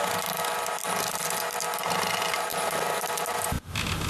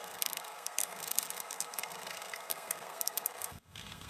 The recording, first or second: first